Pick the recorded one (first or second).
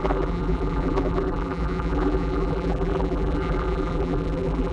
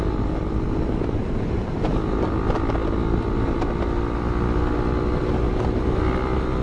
second